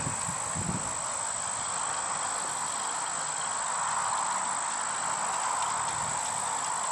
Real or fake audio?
real